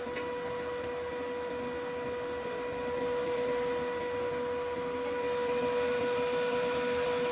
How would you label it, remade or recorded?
recorded